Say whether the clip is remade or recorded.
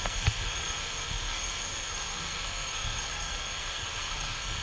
remade